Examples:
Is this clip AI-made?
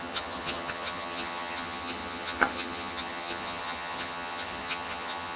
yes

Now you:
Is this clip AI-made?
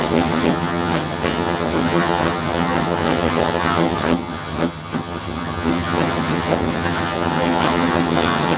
yes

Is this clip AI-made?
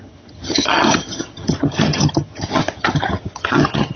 yes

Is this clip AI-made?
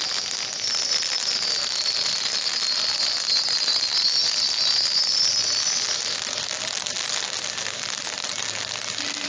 no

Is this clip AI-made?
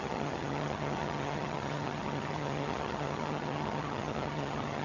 yes